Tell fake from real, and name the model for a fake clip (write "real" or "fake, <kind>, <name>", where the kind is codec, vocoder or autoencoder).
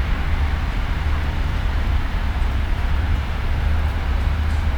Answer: fake, vocoder, BigVGAN v2